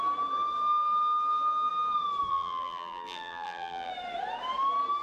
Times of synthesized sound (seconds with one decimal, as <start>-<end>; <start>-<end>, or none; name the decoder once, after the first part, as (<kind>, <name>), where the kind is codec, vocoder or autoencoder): 2.3-3.9 (vocoder, BigVGAN v2)